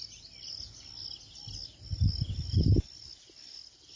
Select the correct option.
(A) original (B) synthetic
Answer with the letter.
A